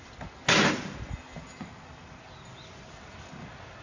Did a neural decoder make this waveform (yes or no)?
no